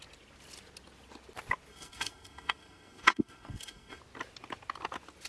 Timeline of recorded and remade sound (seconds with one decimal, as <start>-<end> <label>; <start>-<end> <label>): 0.0-1.7 recorded; 1.7-4.0 remade; 4.0-5.3 recorded